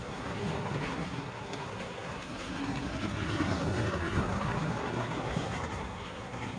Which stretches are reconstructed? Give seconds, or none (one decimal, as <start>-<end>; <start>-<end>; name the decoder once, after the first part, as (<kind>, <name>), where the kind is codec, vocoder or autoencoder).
0.0-6.6 (codec, SNAC)